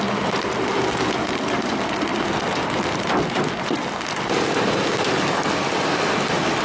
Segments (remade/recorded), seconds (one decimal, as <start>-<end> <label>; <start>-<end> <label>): 0.0-6.6 recorded